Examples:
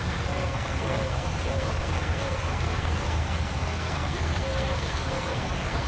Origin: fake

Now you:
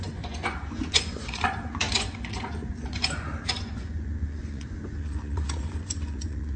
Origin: fake